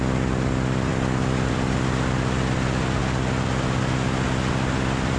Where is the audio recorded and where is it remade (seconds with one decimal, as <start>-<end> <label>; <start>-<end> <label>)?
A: 0.0-3.0 remade; 3.0-4.5 recorded; 4.5-5.2 remade